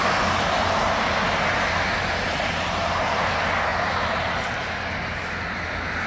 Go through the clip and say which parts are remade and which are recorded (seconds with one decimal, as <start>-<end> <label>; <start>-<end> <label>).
0.0-6.1 recorded